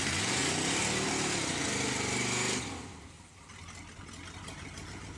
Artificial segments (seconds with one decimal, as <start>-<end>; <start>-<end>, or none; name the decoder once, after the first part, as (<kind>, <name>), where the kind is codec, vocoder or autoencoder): 0.0-5.2 (vocoder, BigVGAN v2)